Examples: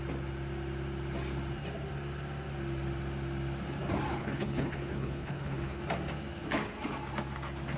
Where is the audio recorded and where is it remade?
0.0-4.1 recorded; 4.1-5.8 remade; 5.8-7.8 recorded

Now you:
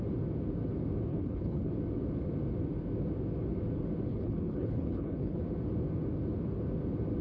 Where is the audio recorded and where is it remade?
0.0-1.1 recorded; 1.1-1.7 remade; 1.7-4.1 recorded; 4.1-5.4 remade; 5.4-7.2 recorded

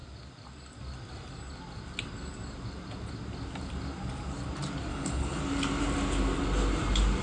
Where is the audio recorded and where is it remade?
0.0-4.9 recorded; 4.9-5.4 remade; 5.4-7.2 recorded